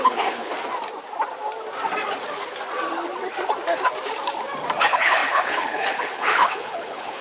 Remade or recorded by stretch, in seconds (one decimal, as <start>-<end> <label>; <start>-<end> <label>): 0.0-0.5 remade; 0.5-4.8 recorded; 4.8-7.2 remade